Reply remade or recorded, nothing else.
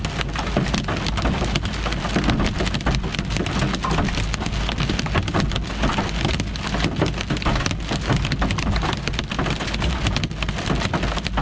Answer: recorded